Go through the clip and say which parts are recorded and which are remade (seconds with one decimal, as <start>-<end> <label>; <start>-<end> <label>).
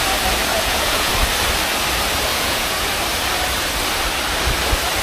0.0-0.5 recorded; 0.5-1.1 remade; 1.1-2.3 recorded; 2.3-2.9 remade; 2.9-5.0 recorded